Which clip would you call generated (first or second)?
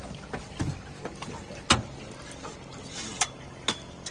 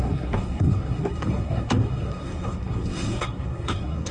second